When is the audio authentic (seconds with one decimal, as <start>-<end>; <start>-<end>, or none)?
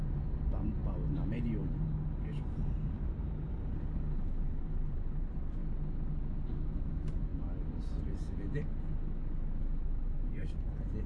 5.6-6.8; 7.3-9.6